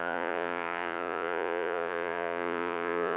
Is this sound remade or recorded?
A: remade